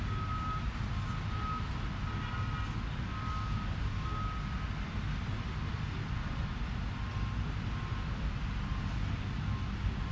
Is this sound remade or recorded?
recorded